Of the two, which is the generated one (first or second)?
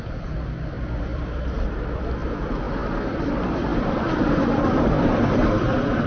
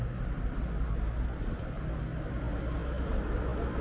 first